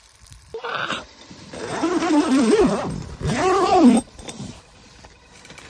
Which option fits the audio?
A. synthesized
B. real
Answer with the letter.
A